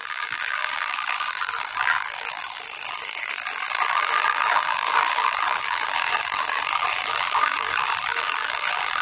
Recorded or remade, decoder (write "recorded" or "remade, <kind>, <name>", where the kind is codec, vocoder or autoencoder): remade, vocoder, BigVGAN v2